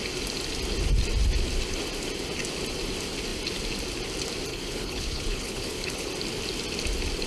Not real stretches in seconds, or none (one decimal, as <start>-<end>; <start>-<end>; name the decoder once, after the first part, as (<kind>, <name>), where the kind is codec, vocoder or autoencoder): 4.5-6.1 (codec, HILCodec)